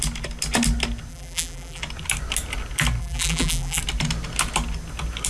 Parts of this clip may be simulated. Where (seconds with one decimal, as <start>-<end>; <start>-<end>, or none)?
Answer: 1.1-1.8; 3.0-3.8